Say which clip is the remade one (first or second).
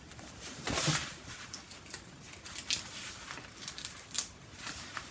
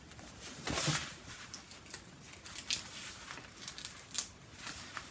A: first